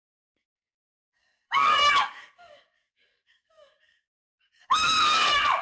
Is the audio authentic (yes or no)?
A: no